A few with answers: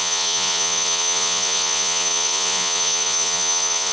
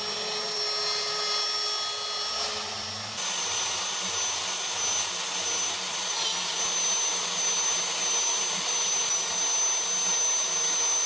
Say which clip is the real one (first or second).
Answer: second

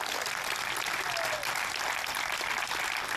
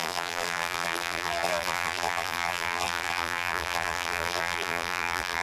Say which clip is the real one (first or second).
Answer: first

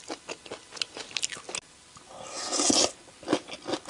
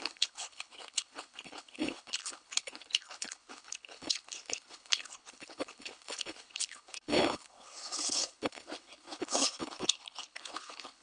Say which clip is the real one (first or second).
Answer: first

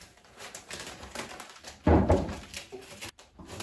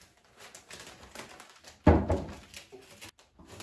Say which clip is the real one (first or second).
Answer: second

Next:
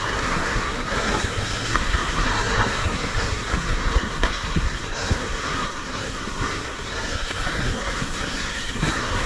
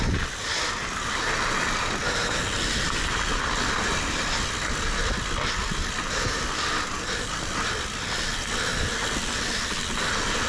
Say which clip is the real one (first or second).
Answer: second